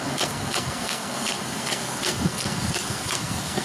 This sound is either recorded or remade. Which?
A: remade